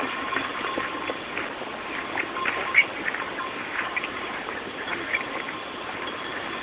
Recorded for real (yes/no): yes